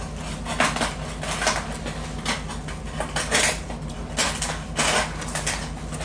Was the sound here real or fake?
real